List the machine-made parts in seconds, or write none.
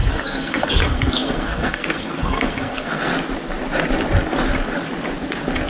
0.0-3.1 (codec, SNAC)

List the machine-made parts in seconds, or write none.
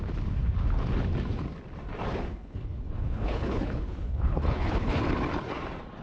2.3-5.0 (codec, HILCodec)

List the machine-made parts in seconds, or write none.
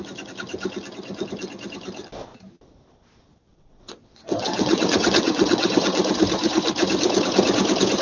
3.5-6.1 (vocoder, WaveNeXt)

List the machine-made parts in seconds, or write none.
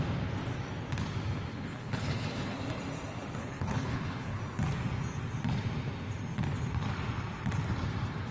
1.5-2.6 (codec, HILCodec); 3.4-4.4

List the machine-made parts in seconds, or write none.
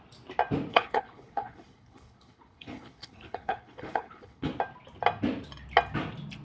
0.7-4.5 (codec, HILCodec)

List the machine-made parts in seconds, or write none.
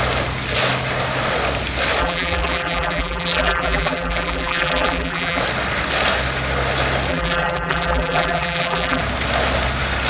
2.0-5.4 (vocoder, BigVGAN v2); 7.1-9.0